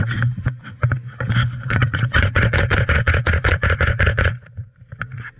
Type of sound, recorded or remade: remade